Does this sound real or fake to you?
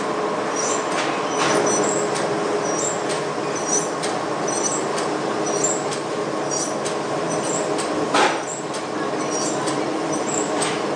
real